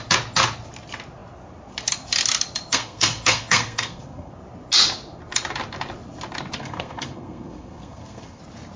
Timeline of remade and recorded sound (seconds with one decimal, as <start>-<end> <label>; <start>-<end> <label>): 0.0-2.7 recorded; 2.7-4.3 remade; 4.3-6.6 recorded; 6.6-8.4 remade; 8.4-8.8 recorded